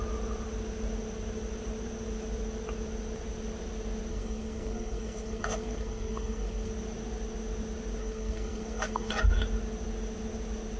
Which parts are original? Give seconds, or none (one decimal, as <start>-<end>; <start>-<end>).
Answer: 0.0-4.1; 6.7-8.0; 9.1-10.8